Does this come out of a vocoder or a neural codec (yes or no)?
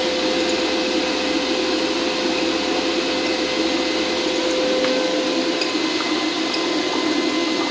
no